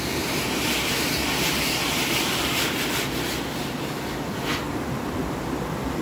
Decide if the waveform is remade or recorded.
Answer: recorded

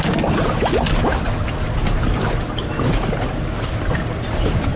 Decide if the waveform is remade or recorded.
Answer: recorded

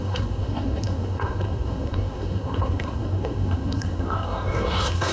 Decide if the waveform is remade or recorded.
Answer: remade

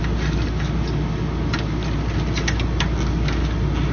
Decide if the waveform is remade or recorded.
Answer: recorded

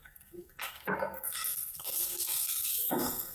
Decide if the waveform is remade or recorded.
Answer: remade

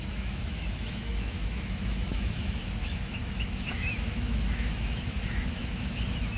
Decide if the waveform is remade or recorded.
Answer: remade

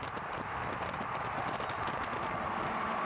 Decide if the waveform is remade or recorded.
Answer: recorded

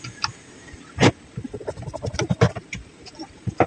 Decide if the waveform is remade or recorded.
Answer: remade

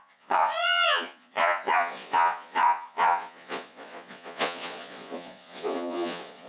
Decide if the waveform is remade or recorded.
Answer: remade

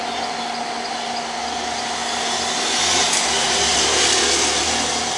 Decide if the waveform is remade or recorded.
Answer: recorded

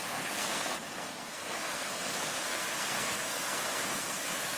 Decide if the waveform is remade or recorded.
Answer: remade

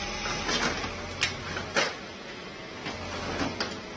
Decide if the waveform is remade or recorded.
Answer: recorded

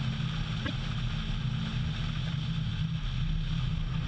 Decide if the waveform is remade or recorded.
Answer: recorded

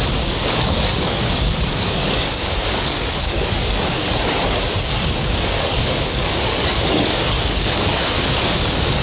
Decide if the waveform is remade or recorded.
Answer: remade